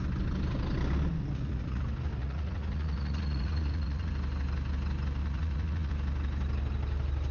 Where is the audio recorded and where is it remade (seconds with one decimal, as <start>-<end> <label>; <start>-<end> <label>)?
0.0-1.2 recorded; 1.2-1.8 remade; 1.8-2.2 recorded; 2.2-4.1 remade; 4.1-5.2 recorded; 5.2-5.9 remade; 5.9-7.3 recorded